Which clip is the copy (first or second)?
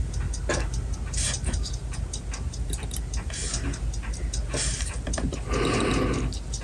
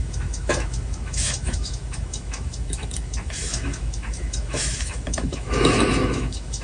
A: second